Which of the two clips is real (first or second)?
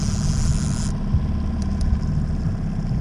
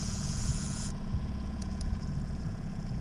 first